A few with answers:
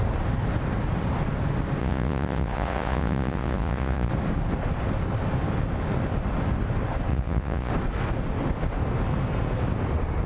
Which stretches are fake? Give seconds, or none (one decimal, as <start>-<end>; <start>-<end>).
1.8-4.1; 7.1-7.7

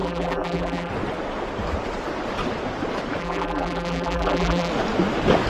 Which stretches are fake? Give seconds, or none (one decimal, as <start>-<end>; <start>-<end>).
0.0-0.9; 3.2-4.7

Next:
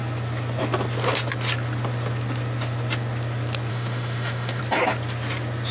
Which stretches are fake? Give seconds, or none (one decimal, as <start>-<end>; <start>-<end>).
3.7-4.6